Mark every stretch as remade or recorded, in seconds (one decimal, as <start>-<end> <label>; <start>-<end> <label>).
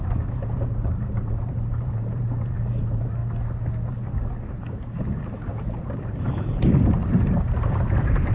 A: 0.0-3.2 remade; 3.2-3.9 recorded; 3.9-8.3 remade